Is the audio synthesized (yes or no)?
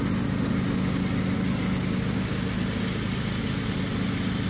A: no